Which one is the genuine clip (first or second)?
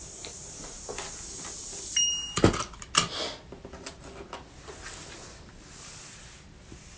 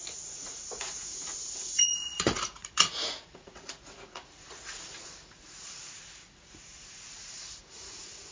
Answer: first